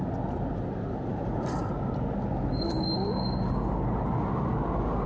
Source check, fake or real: real